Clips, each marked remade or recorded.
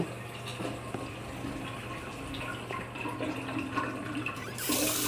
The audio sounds remade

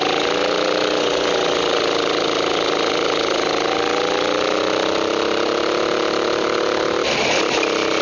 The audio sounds recorded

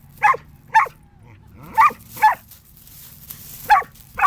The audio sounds recorded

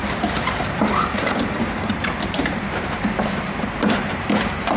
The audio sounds remade